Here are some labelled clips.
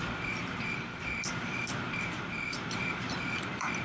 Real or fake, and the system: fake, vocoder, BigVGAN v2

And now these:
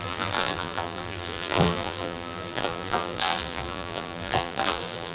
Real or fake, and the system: fake, vocoder, BigVGAN v2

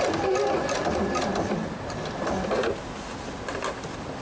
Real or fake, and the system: real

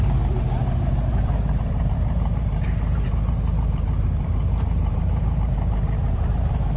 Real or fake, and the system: fake, vocoder, BigVGAN v2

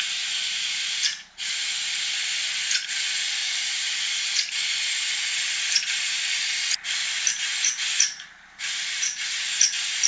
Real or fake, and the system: real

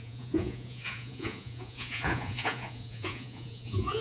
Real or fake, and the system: fake, vocoder, Vocos